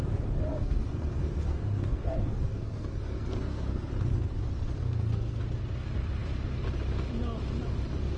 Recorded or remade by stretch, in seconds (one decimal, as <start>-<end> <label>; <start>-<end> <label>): 0.0-0.5 recorded; 0.5-3.9 remade; 3.9-4.8 recorded; 4.8-5.4 remade; 5.4-8.2 recorded